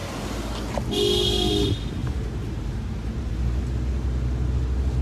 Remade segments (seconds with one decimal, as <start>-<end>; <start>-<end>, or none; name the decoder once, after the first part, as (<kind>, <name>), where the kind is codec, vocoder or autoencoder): 2.0-3.3 (vocoder, BigVGAN v2)

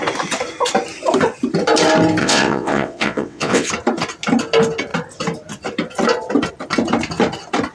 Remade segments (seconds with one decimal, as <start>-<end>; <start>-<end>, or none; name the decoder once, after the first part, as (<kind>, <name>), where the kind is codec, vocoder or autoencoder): 2.2-3.7 (vocoder, WaveNeXt)

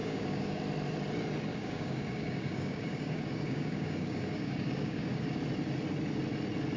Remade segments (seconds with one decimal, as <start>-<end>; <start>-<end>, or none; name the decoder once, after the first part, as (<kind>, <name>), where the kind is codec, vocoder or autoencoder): 0.0-0.6 (codec, DAC); 1.5-5.4

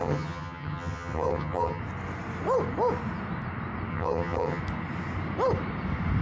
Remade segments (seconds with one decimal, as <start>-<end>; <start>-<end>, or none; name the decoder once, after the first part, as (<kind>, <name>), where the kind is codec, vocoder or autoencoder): 0.0-1.8 (vocoder, HiFi-GAN); 3.9-4.6